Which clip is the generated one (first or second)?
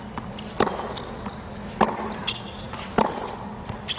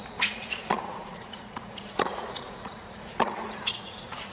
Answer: second